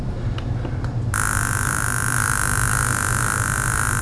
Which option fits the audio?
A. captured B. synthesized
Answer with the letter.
A